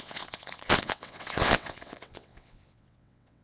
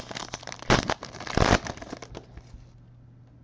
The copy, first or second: first